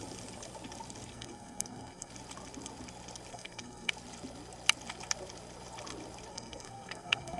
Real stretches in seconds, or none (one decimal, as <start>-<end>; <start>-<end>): 0.0-1.1; 2.1-3.3; 3.9-6.3